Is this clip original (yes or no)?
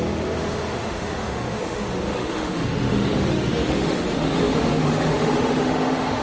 no